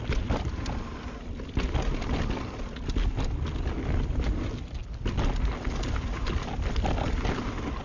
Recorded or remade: recorded